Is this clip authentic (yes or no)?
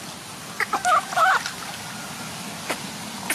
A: yes